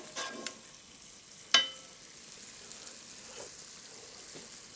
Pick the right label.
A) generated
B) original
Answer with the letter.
B